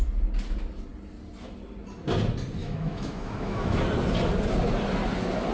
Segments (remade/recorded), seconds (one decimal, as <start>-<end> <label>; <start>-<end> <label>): 0.0-2.6 recorded; 2.6-3.8 remade; 3.8-5.5 recorded